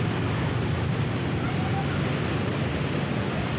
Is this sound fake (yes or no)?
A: no